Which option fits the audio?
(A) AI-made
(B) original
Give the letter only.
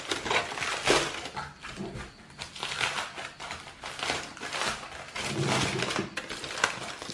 B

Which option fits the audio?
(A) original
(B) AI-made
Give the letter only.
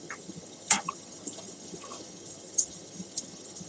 B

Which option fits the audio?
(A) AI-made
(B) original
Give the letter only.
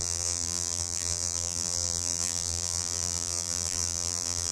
A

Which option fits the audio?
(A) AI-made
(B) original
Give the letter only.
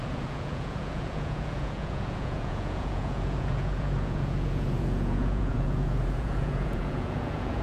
A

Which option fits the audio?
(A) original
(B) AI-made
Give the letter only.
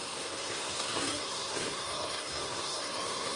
B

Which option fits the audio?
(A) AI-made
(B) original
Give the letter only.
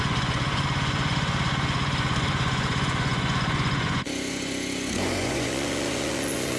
A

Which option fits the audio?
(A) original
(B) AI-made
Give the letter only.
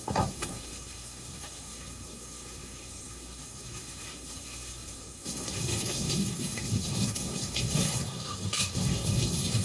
B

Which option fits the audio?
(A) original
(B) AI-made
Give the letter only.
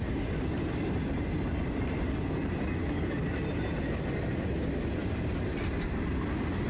A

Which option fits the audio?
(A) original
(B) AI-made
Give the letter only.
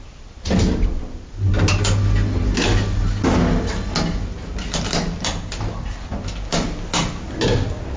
A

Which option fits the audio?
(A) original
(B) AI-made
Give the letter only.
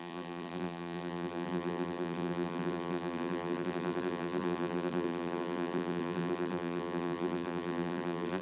B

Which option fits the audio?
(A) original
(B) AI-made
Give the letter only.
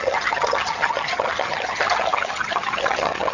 B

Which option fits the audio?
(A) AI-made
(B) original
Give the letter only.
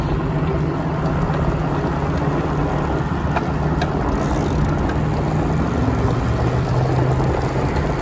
B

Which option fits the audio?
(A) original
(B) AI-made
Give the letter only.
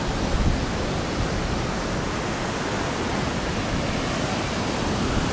A